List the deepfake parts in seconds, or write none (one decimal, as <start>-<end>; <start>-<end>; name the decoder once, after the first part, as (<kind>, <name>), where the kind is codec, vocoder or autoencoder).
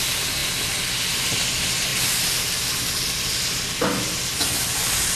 none